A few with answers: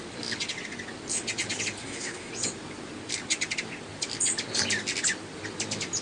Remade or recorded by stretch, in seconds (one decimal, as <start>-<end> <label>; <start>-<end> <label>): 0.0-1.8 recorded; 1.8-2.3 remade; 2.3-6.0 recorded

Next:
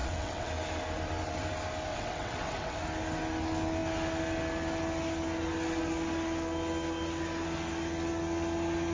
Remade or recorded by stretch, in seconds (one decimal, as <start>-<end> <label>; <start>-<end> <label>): 0.0-0.5 remade; 0.5-1.9 recorded; 1.9-2.8 remade; 2.8-8.9 recorded

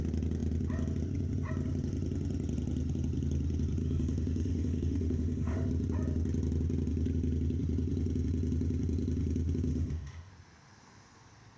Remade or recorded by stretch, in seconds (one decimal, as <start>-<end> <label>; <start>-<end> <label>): 0.0-3.8 recorded; 3.8-5.7 remade; 5.7-9.7 recorded; 9.7-10.3 remade; 10.3-11.6 recorded

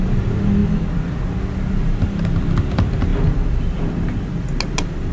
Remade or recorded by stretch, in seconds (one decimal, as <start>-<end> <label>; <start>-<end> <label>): 0.0-5.1 recorded